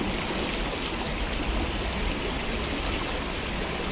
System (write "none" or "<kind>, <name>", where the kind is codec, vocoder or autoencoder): none